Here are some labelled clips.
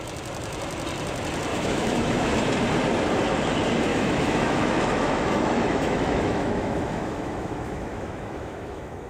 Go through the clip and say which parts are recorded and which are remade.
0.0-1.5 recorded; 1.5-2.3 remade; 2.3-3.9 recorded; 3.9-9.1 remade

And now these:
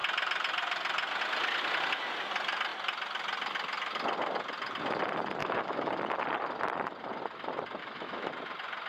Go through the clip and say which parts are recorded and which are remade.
0.0-5.4 recorded; 5.4-5.9 remade; 5.9-7.8 recorded; 7.8-8.3 remade; 8.3-8.9 recorded

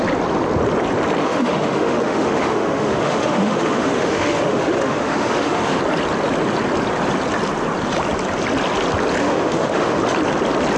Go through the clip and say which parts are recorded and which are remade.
0.0-1.2 recorded; 1.2-5.8 remade; 5.8-9.2 recorded; 9.2-10.0 remade; 10.0-10.8 recorded

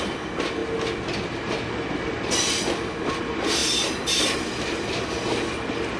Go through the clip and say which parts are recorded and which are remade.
0.0-6.0 recorded

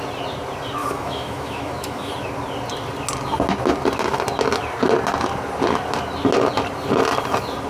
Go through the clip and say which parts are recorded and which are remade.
0.0-0.8 recorded; 0.8-2.1 remade; 2.1-7.7 recorded

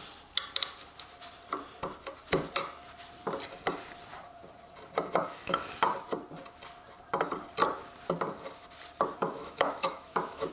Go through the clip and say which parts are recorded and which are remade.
0.0-5.2 recorded; 5.2-5.7 remade; 5.7-9.2 recorded; 9.2-10.5 remade

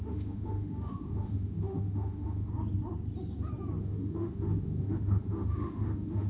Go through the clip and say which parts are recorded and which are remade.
0.0-2.5 remade; 2.5-3.8 recorded; 3.8-6.3 remade